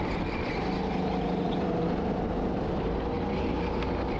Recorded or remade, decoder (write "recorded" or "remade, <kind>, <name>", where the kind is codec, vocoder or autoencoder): recorded